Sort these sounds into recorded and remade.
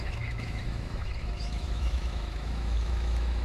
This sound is remade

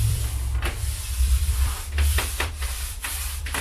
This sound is remade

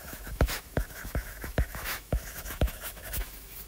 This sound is remade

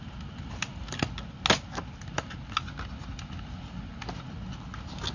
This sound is recorded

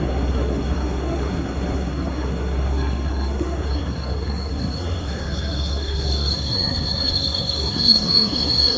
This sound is remade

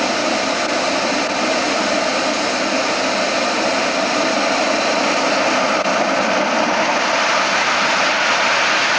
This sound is recorded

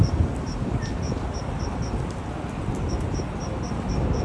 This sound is recorded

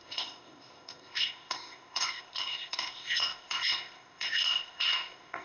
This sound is remade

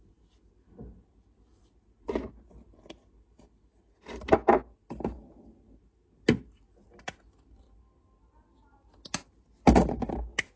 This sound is recorded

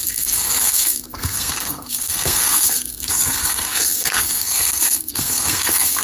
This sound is remade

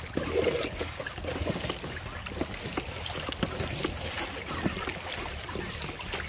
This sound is recorded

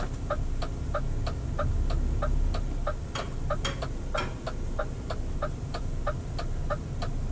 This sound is recorded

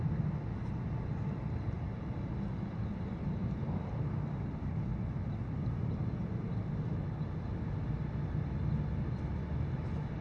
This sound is recorded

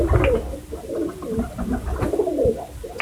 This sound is recorded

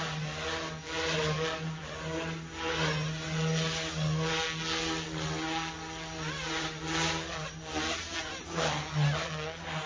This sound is recorded